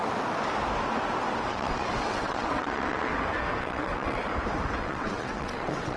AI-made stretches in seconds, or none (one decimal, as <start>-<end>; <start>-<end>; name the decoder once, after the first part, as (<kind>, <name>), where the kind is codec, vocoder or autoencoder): 1.5-3.1 (vocoder, WaveNeXt); 3.6-4.3; 4.8-6.0